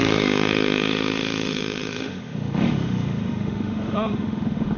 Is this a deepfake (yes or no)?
yes